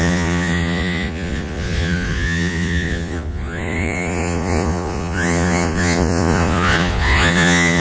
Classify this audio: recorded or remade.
remade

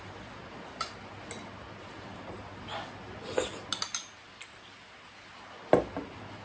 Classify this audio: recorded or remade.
recorded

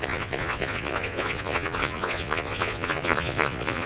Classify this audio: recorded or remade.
remade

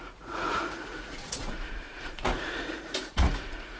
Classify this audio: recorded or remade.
remade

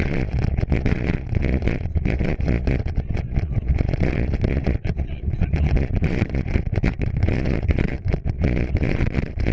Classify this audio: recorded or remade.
remade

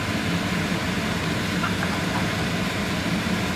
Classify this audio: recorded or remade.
recorded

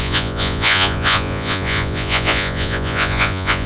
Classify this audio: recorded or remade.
remade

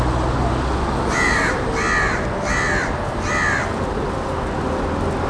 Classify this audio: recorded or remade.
recorded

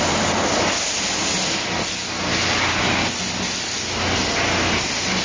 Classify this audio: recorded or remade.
recorded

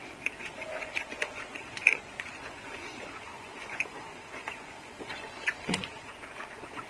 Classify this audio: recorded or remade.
remade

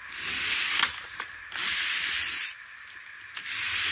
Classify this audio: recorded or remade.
recorded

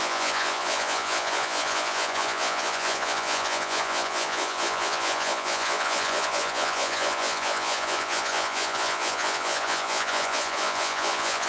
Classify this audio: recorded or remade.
remade